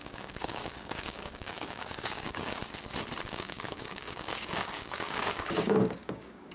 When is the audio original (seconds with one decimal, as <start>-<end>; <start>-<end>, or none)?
2.6-3.3